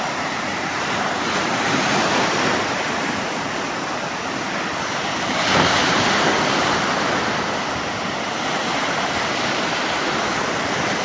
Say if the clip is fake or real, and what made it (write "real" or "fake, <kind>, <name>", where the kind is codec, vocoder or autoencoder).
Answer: real